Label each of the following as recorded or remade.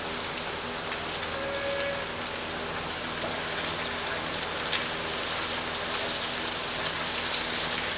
recorded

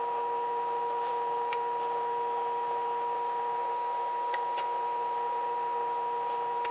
remade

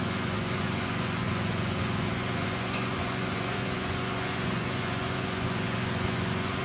remade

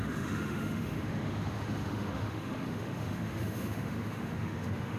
remade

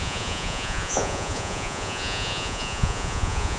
remade